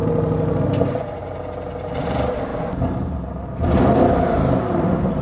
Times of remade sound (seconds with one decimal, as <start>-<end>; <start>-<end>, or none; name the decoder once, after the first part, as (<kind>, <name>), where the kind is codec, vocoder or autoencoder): 0.6-1.2 (vocoder, BigVGAN v2); 2.0-5.2